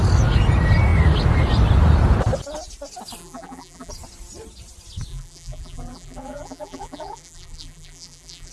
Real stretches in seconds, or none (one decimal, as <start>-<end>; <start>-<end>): 0.0-3.2; 3.9-5.1